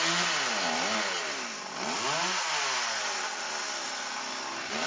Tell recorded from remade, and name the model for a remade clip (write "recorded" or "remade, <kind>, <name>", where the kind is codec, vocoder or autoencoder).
recorded